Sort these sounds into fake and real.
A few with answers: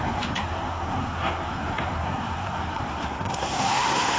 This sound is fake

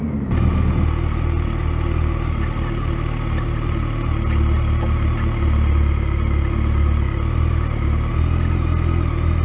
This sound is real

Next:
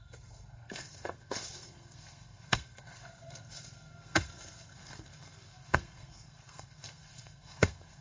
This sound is fake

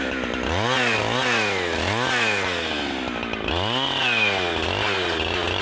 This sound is real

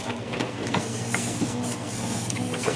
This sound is fake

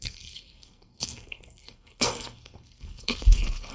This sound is fake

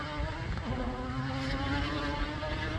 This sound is real